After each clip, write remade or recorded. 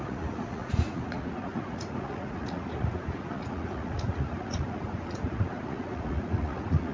remade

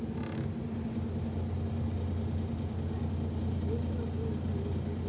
recorded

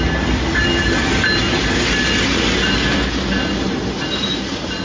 recorded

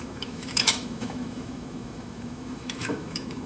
remade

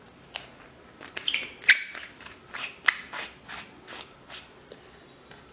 recorded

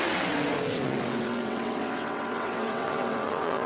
remade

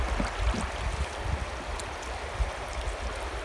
recorded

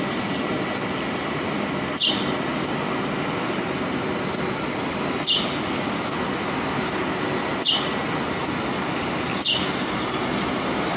recorded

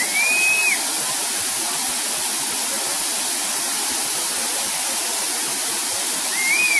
recorded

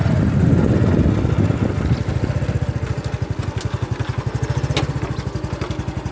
recorded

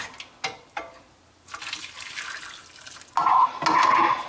recorded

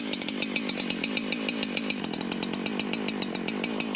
recorded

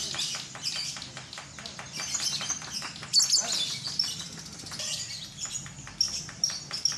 recorded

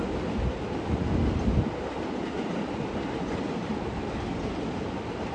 recorded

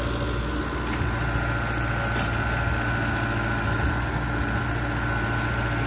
recorded